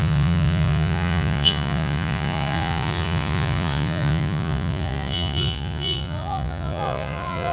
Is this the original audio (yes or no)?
no